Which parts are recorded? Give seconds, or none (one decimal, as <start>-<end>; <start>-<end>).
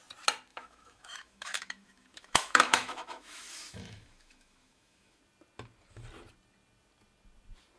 0.0-0.5; 5.2-7.8